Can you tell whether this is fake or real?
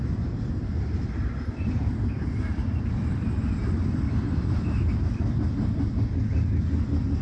real